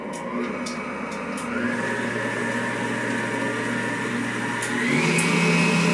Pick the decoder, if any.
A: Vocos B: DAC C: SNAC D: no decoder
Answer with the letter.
D